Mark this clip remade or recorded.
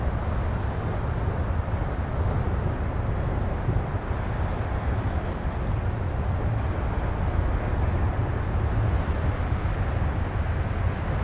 recorded